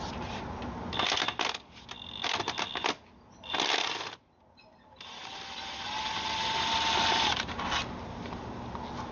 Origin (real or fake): real